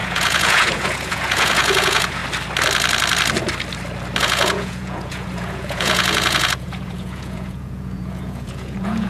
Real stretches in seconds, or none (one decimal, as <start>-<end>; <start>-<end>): 2.2-4.2